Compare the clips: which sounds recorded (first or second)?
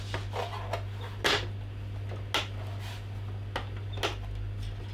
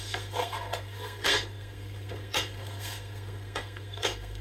first